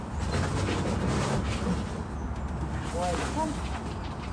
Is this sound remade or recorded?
recorded